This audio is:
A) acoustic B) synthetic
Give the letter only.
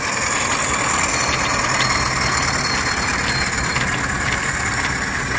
A